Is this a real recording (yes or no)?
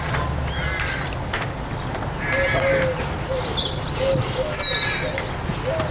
yes